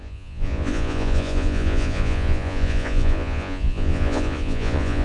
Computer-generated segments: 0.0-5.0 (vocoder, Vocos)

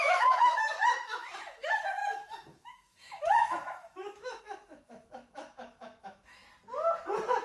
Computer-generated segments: 0.0-6.4 (autoencoder, DAC-VAE)